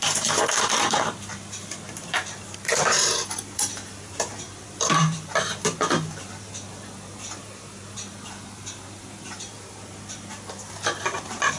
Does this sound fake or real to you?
fake